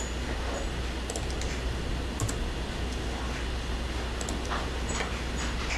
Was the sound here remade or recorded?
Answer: recorded